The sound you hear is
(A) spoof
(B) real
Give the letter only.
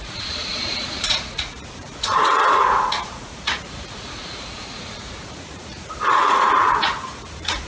A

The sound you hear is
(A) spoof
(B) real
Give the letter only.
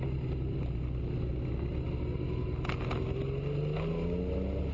B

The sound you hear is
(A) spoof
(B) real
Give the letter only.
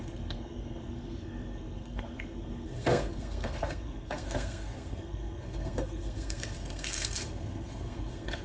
A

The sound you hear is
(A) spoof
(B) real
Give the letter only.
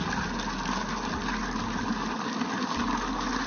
B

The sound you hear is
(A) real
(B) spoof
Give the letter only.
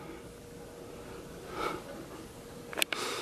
A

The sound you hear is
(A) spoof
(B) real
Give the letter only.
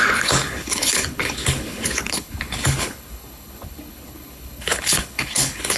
A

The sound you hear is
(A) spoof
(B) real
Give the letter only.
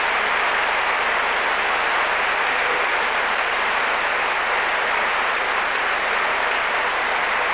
B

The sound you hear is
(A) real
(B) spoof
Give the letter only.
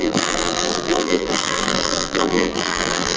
B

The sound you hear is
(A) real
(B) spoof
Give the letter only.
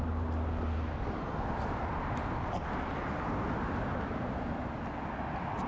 A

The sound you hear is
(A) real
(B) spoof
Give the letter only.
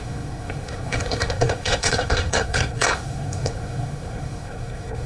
B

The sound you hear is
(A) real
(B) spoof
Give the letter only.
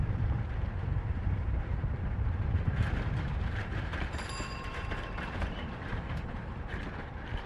B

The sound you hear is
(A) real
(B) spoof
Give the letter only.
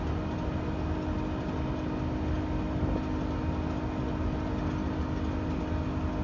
A